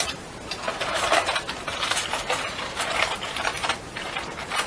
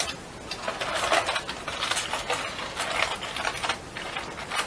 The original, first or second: second